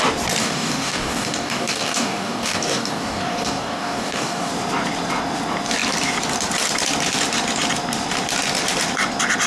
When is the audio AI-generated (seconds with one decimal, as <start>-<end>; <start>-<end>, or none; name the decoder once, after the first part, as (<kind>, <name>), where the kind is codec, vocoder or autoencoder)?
0.4-4.5 (codec, DAC)